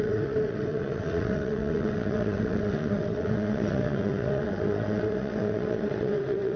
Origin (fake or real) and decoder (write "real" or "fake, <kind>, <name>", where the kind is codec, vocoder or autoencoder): fake, vocoder, WaveNeXt